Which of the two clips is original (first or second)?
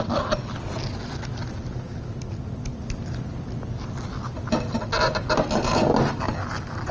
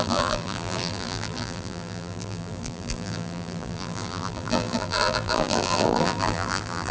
first